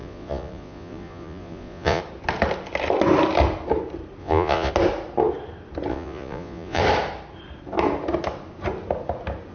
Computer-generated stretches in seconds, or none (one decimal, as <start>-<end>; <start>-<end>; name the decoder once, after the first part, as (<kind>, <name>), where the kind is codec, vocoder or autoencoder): 0.0-2.0 (vocoder, Vocos); 4.2-4.7; 5.9-6.8